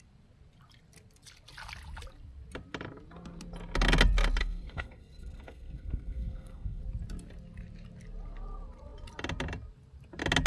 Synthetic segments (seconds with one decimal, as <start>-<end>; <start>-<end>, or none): 4.4-6.8